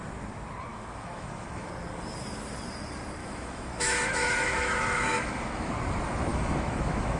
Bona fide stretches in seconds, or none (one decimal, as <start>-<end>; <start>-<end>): 0.0-0.7; 1.7-3.2; 5.7-6.3